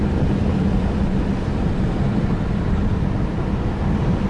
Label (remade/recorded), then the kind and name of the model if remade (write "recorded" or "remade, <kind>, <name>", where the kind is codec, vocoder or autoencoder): recorded